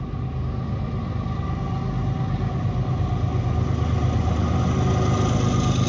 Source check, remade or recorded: recorded